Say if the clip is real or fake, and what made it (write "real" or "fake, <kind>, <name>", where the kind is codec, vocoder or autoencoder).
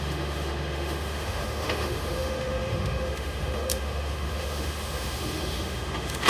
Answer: fake, autoencoder, DAC-VAE